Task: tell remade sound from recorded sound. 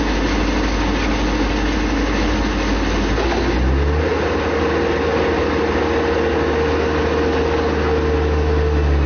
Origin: recorded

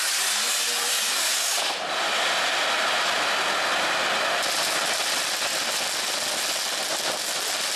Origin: recorded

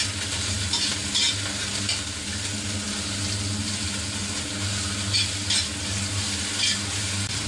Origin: recorded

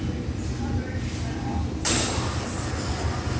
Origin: recorded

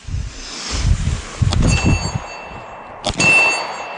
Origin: recorded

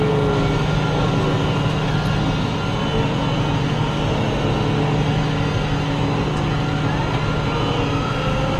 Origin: recorded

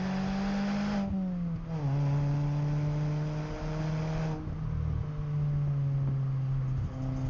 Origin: recorded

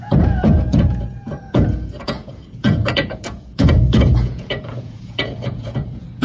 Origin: remade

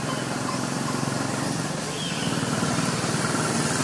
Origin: recorded